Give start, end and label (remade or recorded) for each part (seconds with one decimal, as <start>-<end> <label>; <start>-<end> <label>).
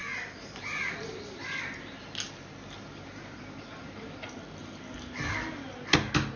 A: 0.0-6.4 recorded